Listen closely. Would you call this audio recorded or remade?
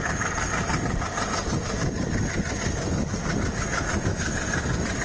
recorded